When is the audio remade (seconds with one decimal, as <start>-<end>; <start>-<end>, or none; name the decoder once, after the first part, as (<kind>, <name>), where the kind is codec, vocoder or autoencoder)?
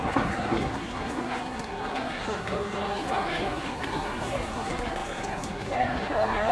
0.0-6.5 (codec, SNAC)